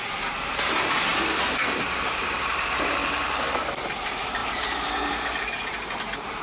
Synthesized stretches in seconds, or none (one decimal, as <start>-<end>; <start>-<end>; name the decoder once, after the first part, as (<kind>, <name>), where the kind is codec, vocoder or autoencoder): 0.0-3.0 (vocoder, BigVGAN v2); 3.9-6.4